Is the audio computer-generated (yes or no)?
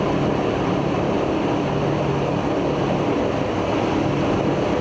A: no